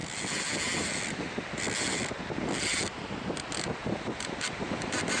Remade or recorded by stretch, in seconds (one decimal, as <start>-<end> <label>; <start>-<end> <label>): 0.0-3.1 remade; 3.1-3.8 recorded; 3.8-5.2 remade